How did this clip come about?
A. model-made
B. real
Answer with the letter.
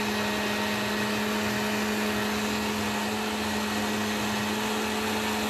B